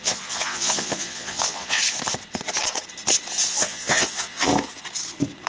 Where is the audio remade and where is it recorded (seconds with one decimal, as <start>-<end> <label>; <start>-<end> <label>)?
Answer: 0.0-1.8 remade; 1.8-3.5 recorded; 3.5-4.5 remade; 4.5-5.5 recorded

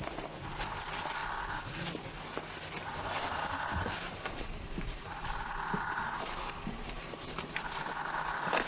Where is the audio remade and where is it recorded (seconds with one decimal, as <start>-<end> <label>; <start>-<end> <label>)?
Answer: 0.0-3.7 recorded; 3.7-7.8 remade; 7.8-8.7 recorded

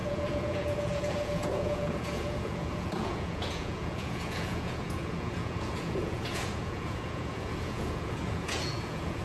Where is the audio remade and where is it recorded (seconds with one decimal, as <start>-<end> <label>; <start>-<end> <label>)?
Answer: 0.0-9.2 remade

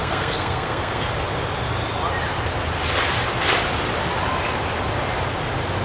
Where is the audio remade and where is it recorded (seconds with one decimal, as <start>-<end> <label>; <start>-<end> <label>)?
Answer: 0.0-1.1 remade; 1.1-5.8 recorded